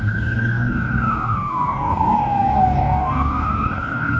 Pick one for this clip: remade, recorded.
remade